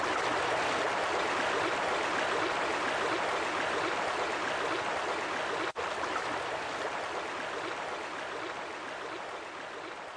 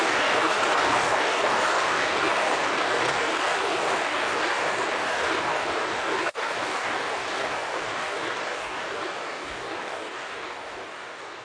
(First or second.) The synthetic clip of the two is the second